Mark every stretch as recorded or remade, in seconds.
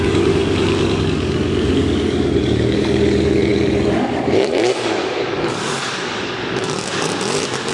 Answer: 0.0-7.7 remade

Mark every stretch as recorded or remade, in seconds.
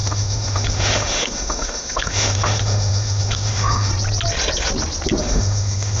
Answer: 0.0-3.9 remade; 3.9-5.2 recorded; 5.2-6.0 remade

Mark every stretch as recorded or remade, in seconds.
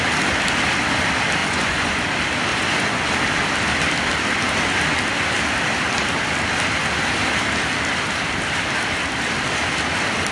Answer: 0.0-1.4 recorded; 1.4-2.0 remade; 2.0-2.5 recorded; 2.5-3.1 remade; 3.1-10.3 recorded